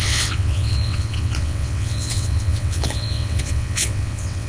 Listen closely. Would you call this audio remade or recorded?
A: remade